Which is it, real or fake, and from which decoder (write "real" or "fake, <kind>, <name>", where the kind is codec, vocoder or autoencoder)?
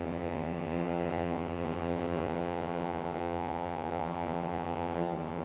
fake, vocoder, HiFi-GAN